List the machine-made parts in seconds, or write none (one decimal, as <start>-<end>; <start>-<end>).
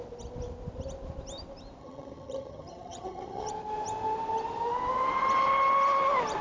1.8-3.5